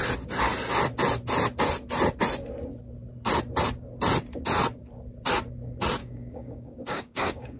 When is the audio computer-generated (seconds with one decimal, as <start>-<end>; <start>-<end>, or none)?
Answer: 6.0-7.6